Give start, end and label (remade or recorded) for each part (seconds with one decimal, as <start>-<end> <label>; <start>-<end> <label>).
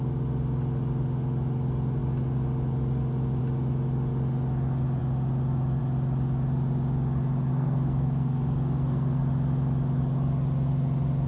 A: 0.0-7.5 recorded; 7.5-9.2 remade; 9.2-11.3 recorded